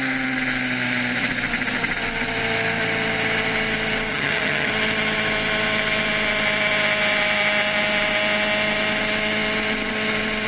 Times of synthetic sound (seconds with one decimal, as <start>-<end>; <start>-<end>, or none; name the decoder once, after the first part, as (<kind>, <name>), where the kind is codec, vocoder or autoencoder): 4.1-4.7 (vocoder, HiFi-GAN)